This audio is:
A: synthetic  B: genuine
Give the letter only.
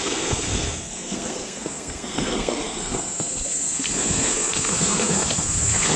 A